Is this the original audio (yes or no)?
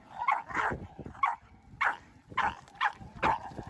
yes